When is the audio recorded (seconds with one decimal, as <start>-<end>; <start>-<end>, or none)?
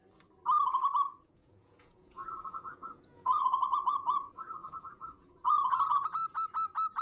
0.0-1.1; 6.2-7.0